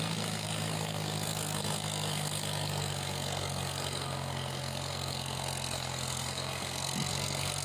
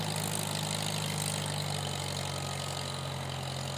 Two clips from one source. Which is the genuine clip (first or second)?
second